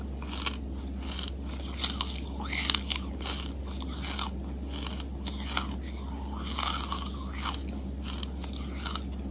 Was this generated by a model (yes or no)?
no